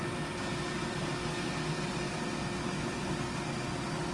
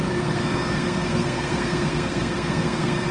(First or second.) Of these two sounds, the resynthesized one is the second